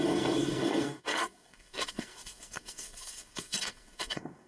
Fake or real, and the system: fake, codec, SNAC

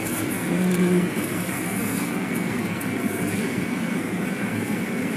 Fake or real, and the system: fake, codec, SNAC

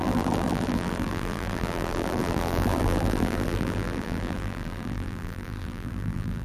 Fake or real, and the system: fake, vocoder, BigVGAN v2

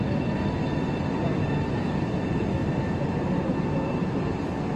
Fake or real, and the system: real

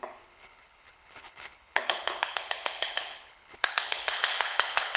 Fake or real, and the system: fake, codec, HILCodec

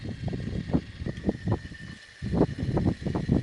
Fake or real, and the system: real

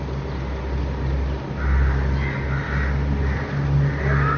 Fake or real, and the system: real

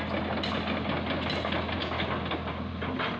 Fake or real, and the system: real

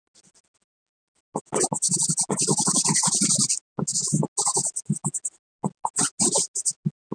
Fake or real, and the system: real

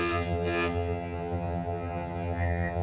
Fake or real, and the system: fake, vocoder, HiFi-GAN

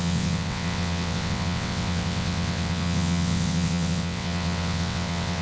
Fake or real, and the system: fake, vocoder, WaveNeXt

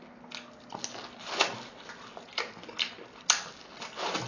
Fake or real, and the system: real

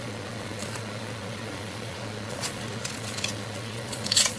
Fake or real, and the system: fake, vocoder, Vocos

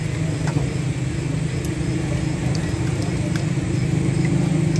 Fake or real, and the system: real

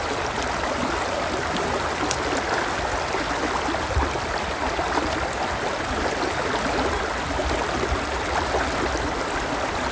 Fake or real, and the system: real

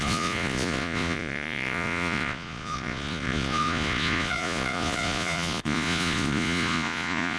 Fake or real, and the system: fake, vocoder, Vocos